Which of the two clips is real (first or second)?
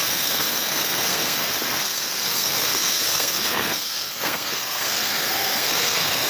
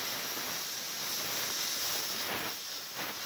second